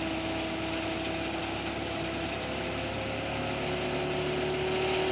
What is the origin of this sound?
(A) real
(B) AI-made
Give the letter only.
A